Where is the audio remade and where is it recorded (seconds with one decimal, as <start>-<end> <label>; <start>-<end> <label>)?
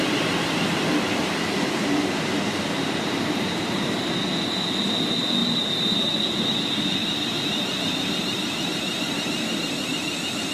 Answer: 0.0-1.2 recorded; 1.2-3.9 remade; 3.9-5.4 recorded; 5.4-6.4 remade; 6.4-7.0 recorded; 7.0-10.5 remade